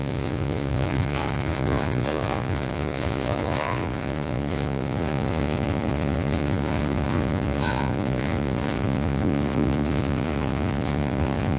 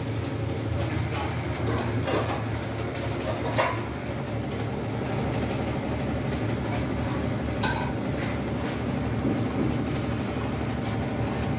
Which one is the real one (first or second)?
second